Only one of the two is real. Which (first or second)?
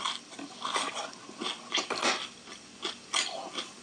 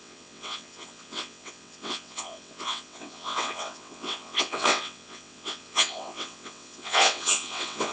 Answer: first